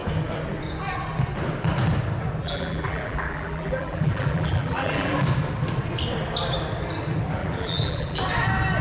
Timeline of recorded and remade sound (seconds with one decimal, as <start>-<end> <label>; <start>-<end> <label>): 0.0-2.4 recorded; 2.4-5.1 remade; 5.1-7.4 recorded; 7.4-8.2 remade; 8.2-8.8 recorded